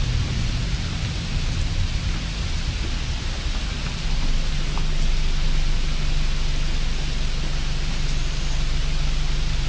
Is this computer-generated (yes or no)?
no